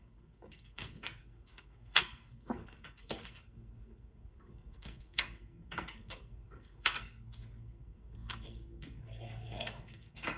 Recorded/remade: remade